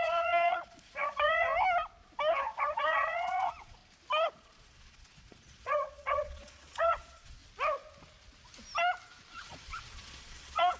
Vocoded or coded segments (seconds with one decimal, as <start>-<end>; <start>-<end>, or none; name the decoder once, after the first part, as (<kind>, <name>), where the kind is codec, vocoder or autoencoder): 0.0-1.5 (vocoder, Vocos); 2.4-3.8; 4.3-7.4; 9.3-10.8